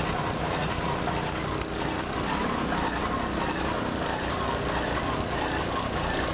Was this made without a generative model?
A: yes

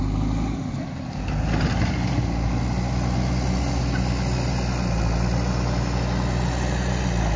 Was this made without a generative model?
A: yes